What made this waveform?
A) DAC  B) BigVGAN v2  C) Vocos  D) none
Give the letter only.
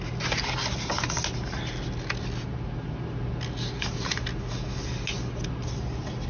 D